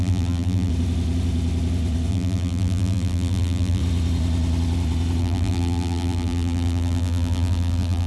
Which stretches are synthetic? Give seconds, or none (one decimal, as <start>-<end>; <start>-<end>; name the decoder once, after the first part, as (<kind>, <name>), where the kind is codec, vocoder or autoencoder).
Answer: 0.0-0.7 (vocoder, BigVGAN v2); 2.1-3.8; 5.2-8.1